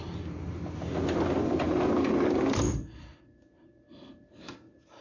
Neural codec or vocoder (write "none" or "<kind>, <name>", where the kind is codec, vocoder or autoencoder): none